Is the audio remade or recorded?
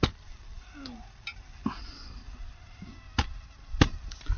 recorded